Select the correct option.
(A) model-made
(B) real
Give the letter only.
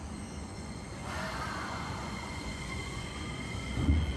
A